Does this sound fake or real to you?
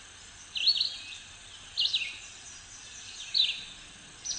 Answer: real